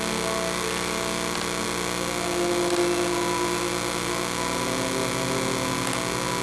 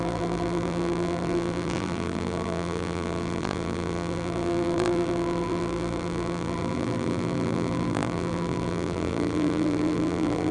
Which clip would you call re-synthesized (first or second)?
second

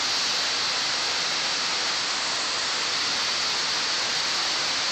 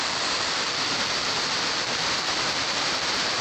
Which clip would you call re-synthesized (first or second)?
second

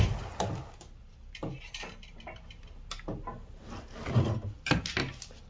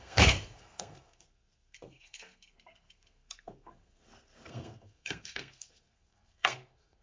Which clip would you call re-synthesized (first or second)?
second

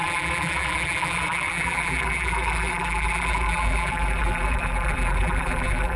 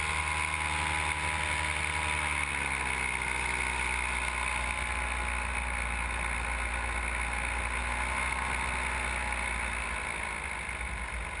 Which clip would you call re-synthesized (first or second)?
first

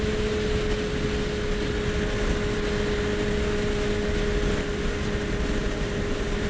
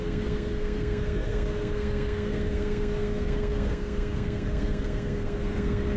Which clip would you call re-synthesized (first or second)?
second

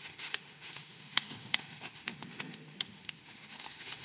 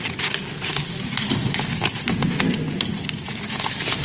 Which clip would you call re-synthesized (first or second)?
first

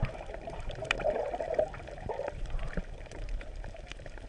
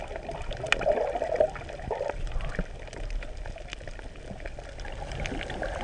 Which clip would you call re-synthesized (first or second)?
first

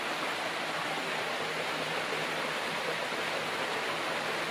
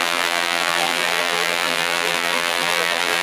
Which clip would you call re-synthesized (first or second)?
second